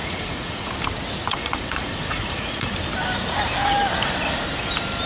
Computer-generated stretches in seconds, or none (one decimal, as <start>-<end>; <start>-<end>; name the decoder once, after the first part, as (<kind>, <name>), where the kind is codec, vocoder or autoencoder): 0.0-0.7 (vocoder, Vocos); 1.3-2.7

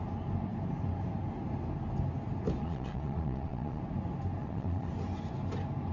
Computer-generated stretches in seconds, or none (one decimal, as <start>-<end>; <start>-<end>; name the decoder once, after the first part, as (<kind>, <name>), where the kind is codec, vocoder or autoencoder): 2.6-3.8 (vocoder, Vocos); 4.4-4.9

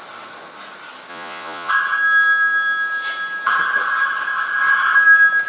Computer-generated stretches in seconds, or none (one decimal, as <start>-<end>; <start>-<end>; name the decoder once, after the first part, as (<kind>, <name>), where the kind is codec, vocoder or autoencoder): 1.1-1.7 (vocoder, Vocos)

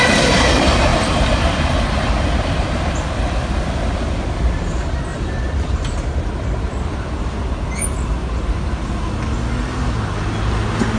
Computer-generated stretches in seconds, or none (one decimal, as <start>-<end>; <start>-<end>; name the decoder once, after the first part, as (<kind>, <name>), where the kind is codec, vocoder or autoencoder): none

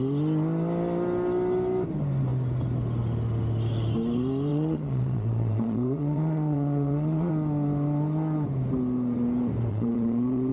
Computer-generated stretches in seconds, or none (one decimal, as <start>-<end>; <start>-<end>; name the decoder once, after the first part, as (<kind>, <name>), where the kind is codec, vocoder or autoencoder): 4.5-7.3 (vocoder, Vocos); 9.7-10.5

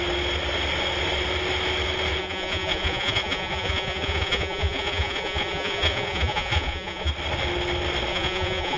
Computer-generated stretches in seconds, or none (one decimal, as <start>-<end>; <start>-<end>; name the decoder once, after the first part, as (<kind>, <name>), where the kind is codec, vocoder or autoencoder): 2.2-7.1 (vocoder, Vocos); 8.1-8.8